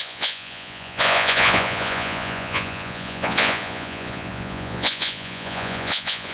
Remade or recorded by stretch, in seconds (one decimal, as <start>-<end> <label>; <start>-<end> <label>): 0.0-6.3 remade